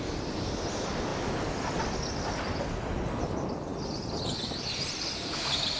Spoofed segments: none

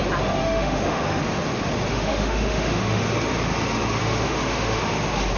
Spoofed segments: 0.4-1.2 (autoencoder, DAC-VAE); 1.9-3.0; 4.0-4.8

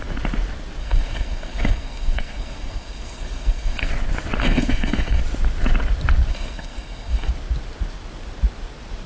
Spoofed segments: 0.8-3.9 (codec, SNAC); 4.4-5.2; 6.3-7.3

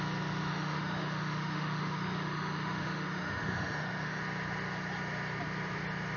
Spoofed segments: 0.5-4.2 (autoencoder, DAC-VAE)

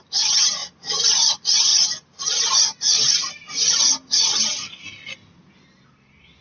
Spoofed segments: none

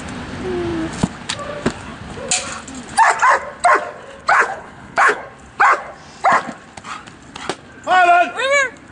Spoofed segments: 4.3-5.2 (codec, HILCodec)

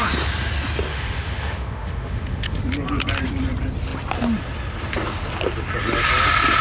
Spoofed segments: 0.9-2.6 (autoencoder, DAC-VAE)

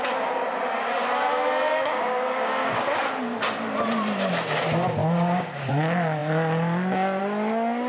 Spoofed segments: 1.7-3.0 (codec, DAC); 5.0-5.7